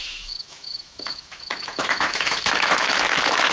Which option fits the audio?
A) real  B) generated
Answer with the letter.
B